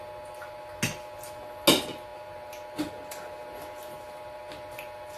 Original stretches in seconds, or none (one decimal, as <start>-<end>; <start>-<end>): 0.0-5.2